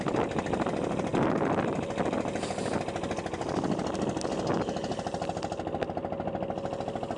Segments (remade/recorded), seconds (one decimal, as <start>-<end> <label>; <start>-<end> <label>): 0.0-7.2 recorded